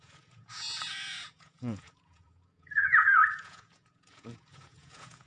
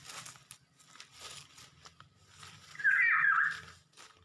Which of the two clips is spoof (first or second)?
first